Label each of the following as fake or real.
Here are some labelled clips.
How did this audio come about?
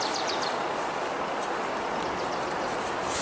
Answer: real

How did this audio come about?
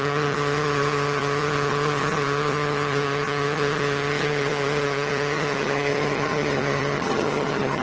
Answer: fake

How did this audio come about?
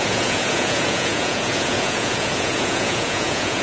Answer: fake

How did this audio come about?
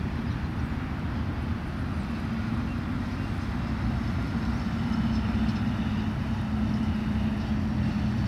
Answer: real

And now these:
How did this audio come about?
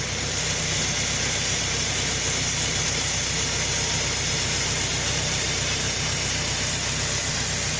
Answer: real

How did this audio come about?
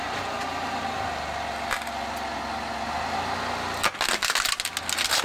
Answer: real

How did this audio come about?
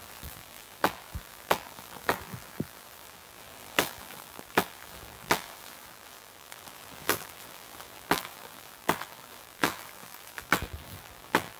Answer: fake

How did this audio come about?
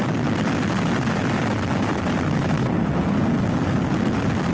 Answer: real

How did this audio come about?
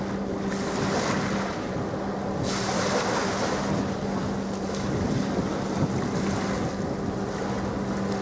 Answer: real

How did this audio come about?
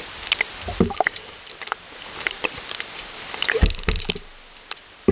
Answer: real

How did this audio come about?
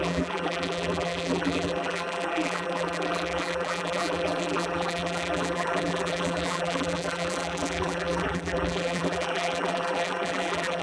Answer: fake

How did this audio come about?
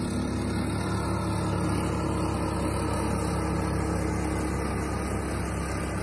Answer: real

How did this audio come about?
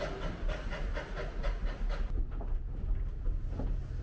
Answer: real